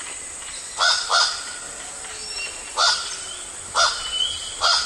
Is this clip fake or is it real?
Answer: real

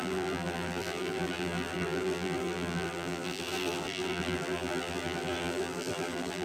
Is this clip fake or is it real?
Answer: fake